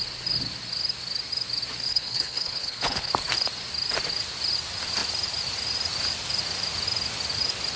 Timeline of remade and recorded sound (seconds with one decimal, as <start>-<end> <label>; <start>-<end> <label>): 0.0-1.9 recorded; 1.9-3.1 remade; 3.1-7.8 recorded